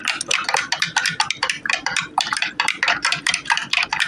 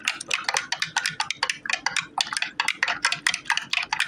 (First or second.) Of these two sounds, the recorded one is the second